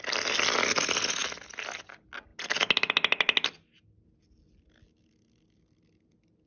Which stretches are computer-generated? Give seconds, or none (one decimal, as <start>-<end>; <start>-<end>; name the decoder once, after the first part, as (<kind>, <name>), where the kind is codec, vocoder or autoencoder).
none